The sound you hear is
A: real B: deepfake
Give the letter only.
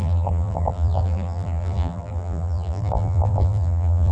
B